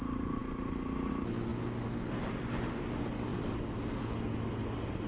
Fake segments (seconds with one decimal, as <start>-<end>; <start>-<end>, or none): none